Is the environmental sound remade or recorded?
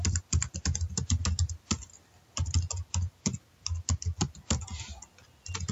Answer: recorded